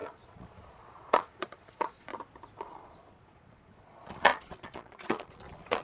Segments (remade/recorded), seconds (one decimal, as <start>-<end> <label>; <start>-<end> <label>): 0.0-2.1 remade; 2.1-2.6 recorded; 2.6-5.8 remade